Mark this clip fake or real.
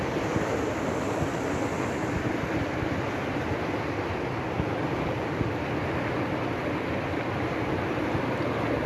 real